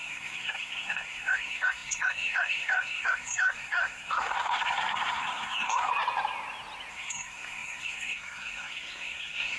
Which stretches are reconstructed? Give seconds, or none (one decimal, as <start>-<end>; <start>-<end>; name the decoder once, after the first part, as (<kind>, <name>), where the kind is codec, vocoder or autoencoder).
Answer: 0.0-5.9 (codec, SNAC); 6.9-9.6